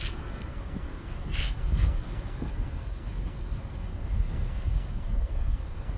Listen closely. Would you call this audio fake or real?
fake